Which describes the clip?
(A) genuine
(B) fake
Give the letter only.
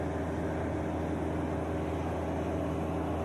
A